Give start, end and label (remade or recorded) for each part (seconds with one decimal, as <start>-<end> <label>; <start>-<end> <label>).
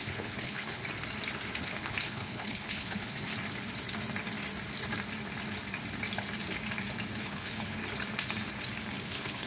0.0-0.8 remade; 0.8-1.6 recorded; 1.6-3.3 remade; 3.3-7.2 recorded; 7.2-7.8 remade; 7.8-9.0 recorded; 9.0-9.5 remade